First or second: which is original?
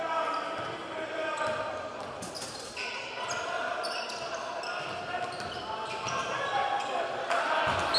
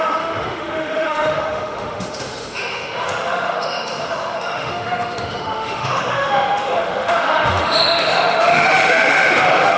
first